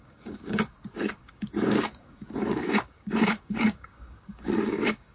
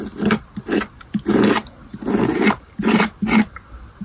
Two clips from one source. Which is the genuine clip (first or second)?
second